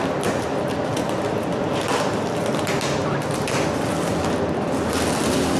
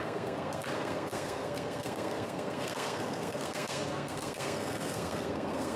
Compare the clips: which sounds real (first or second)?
first